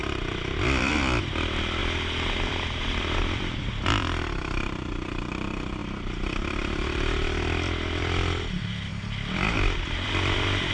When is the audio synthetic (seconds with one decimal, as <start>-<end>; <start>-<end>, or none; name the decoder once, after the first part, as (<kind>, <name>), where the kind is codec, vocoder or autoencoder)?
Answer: 0.0-1.8 (vocoder, BigVGAN v2); 2.5-10.7